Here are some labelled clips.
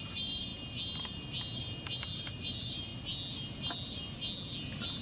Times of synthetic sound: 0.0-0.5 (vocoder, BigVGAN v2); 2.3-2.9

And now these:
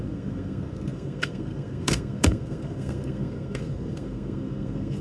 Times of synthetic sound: 0.0-5.0 (codec, SNAC)

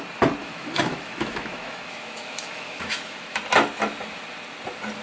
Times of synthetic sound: 0.4-3.4 (autoencoder, DAC-VAE)

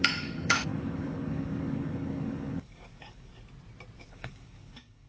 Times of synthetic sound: 0.0-3.3 (codec, DAC); 4.0-5.1

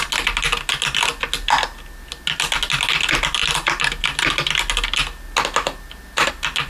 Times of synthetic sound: none

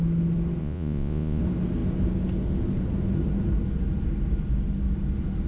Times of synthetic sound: 0.6-1.4 (vocoder, Vocos)

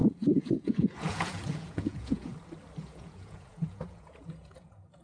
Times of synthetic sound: 0.0-2.3 (vocoder, Vocos); 2.8-5.0

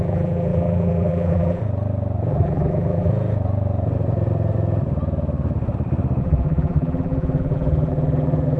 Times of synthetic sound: 0.0-1.6 (vocoder, BigVGAN v2); 2.3-3.1; 6.2-8.6